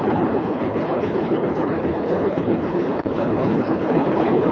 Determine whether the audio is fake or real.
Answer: fake